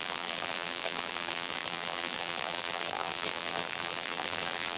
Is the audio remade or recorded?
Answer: remade